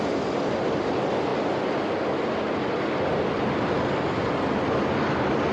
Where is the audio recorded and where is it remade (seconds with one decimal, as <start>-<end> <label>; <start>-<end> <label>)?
0.0-5.5 recorded